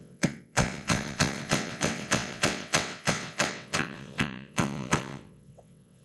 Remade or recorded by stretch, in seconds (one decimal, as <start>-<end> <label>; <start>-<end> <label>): 0.0-6.0 remade